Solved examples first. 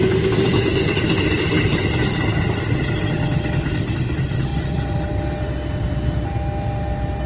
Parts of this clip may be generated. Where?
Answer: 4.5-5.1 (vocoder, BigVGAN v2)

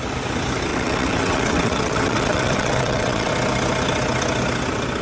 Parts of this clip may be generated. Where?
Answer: 0.7-3.3 (vocoder, WaveNeXt)

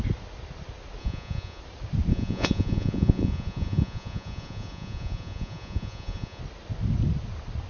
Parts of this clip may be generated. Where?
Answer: 1.0-1.6 (vocoder, Vocos); 2.1-6.4